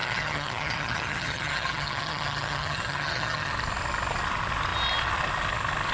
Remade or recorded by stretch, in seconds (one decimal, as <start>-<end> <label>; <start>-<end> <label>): 0.0-3.5 remade; 3.5-5.9 recorded